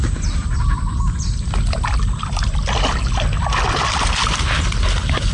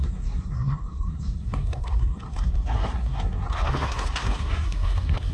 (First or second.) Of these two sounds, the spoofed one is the second